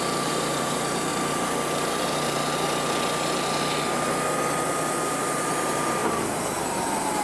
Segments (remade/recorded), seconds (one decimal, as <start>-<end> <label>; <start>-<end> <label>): 0.0-1.1 remade; 1.1-5.0 recorded; 5.0-7.2 remade

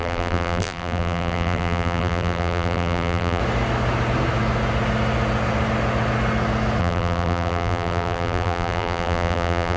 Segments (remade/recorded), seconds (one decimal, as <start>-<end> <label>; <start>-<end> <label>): 0.0-3.4 remade; 3.4-6.8 recorded; 6.8-9.8 remade

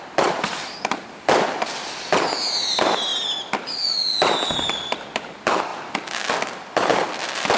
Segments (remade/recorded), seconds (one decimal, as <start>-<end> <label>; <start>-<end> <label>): 0.0-3.1 remade; 3.1-4.7 recorded; 4.7-5.7 remade; 5.7-6.3 recorded; 6.3-7.6 remade

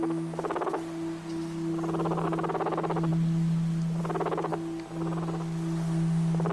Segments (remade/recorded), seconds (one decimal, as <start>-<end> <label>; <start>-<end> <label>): 0.0-6.5 recorded